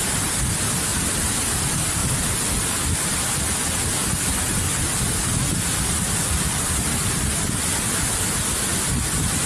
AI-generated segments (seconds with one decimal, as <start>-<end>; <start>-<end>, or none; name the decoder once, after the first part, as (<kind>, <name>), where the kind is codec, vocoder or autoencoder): 0.0-0.9 (vocoder, BigVGAN v2); 1.5-2.0; 2.8-9.5